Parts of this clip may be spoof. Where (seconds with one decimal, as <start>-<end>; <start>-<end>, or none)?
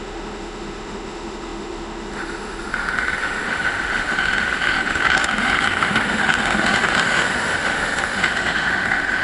0.0-9.2